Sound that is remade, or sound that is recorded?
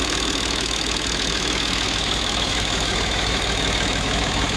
remade